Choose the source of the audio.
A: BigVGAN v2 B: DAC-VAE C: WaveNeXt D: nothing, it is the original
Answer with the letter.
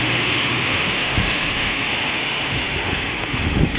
B